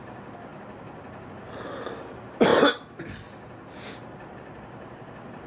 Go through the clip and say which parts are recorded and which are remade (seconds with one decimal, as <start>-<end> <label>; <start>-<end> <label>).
0.0-5.5 recorded